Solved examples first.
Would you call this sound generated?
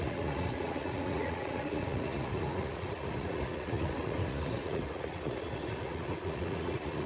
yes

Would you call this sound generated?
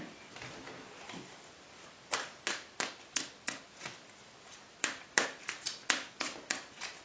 no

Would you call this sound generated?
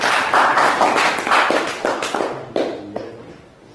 no